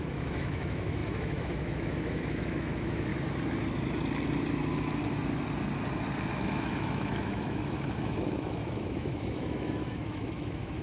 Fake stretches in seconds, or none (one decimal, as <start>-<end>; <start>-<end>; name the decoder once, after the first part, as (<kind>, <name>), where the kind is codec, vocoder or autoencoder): 0.0-3.1 (autoencoder, DAC-VAE); 6.4-10.8